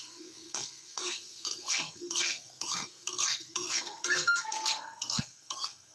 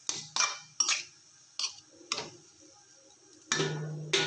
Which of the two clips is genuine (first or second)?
second